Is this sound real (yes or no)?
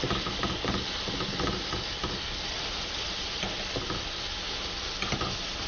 yes